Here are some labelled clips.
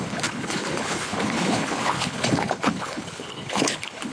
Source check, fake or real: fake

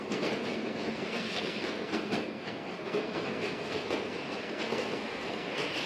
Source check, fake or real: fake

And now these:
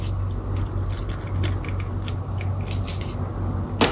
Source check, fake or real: real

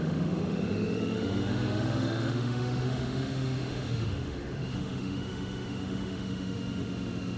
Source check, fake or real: fake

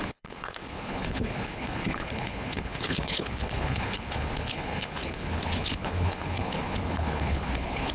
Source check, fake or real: fake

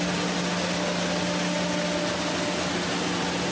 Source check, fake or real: real